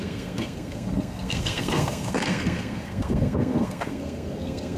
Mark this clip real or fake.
fake